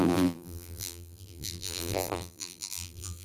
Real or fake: fake